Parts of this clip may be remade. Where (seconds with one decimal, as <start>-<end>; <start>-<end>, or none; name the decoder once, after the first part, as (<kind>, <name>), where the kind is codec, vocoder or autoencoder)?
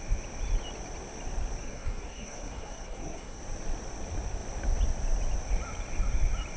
1.6-3.4 (codec, SNAC)